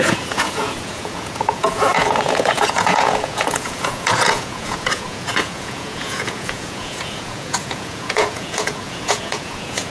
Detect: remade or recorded remade